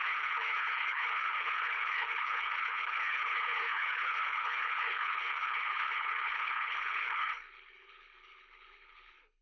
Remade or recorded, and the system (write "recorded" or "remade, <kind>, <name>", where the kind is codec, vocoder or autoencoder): remade, codec, HILCodec